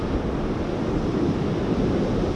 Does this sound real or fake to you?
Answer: real